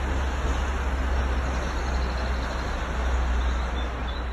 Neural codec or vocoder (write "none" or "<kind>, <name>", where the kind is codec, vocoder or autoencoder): none